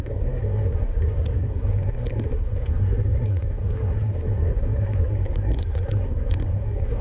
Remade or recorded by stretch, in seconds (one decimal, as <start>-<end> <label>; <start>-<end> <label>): 0.0-7.0 remade